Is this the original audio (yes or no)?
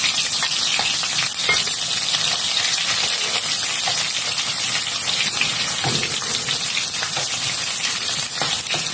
yes